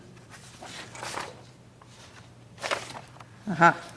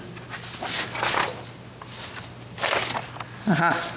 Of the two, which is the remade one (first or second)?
first